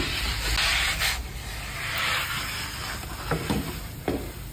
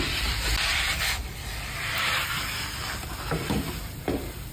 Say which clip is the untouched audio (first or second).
first